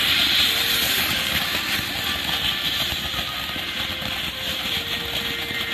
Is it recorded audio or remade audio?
recorded